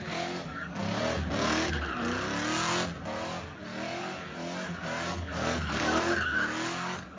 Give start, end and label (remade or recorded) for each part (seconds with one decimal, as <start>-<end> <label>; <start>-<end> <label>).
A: 0.0-0.8 remade; 0.8-5.1 recorded; 5.1-7.2 remade